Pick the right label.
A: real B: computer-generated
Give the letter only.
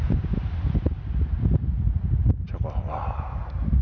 A